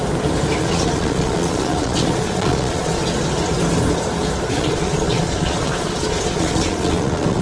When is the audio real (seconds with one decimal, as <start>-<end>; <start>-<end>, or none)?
0.0-0.6; 3.0-4.5